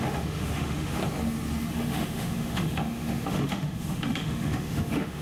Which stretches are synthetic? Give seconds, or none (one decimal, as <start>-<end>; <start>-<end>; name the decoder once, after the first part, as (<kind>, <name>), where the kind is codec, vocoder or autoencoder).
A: 0.0-1.0 (autoencoder, DAC-VAE); 1.7-5.2